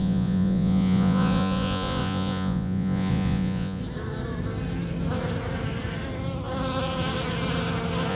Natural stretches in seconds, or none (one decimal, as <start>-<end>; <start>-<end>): 3.8-8.1